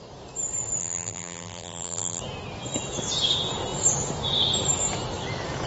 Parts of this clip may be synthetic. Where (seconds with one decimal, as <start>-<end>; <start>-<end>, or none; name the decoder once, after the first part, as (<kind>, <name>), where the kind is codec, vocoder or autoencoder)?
0.8-2.2 (vocoder, BigVGAN v2)

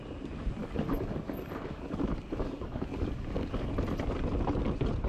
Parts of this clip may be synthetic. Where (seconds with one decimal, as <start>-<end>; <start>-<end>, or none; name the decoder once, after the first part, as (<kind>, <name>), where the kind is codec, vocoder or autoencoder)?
0.6-3.7 (codec, DAC)

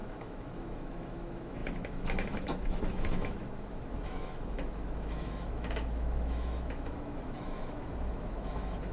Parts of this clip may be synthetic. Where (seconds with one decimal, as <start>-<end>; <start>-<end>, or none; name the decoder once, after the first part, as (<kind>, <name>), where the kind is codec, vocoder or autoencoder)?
0.0-8.9 (autoencoder, DAC-VAE)

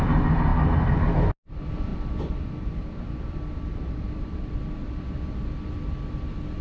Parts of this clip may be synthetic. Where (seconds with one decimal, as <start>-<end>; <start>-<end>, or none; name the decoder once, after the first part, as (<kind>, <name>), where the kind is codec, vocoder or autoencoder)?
1.9-4.6 (vocoder, BigVGAN v2)

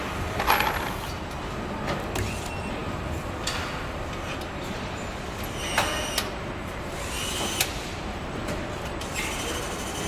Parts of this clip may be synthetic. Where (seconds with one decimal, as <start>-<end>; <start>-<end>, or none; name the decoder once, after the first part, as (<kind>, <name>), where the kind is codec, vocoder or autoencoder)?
2.8-3.3 (vocoder, BigVGAN v2); 6.6-7.1

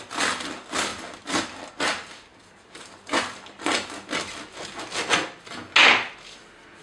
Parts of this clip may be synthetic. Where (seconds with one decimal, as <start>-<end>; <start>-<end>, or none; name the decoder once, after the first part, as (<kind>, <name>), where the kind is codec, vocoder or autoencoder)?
none

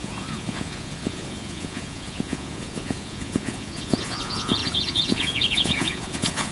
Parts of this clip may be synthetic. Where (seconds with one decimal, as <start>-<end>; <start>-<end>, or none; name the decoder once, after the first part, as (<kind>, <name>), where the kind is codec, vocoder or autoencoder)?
0.0-6.5 (vocoder, Vocos)

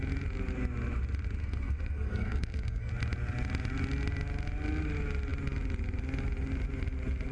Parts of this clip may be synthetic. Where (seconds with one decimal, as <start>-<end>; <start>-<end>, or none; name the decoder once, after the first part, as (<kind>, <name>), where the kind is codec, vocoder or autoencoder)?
1.4-2.9 (codec, SNAC)